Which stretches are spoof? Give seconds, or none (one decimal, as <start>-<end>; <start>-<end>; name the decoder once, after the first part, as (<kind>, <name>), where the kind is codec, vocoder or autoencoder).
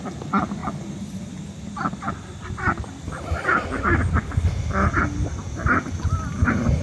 none